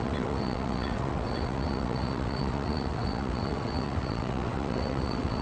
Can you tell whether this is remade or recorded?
remade